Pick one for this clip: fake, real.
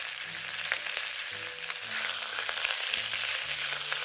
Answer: real